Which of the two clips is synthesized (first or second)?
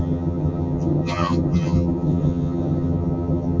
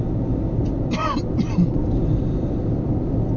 first